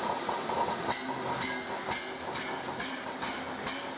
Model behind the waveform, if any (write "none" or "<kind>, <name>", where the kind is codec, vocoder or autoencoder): none